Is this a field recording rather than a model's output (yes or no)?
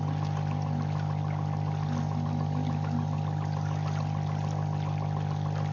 yes